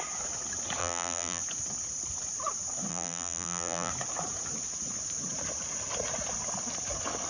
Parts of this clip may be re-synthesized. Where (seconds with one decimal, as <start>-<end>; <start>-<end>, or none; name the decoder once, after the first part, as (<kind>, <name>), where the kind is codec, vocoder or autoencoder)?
0.8-1.4 (vocoder, BigVGAN v2); 2.9-3.9